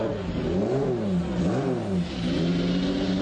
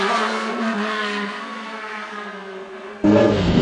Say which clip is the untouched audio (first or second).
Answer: first